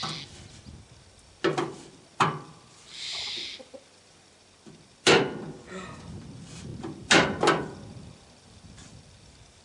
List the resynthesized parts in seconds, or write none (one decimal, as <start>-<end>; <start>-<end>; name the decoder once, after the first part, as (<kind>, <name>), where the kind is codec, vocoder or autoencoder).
2.1-5.2 (vocoder, BigVGAN v2); 6.7-9.6